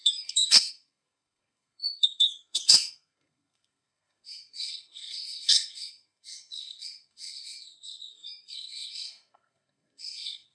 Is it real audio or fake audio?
fake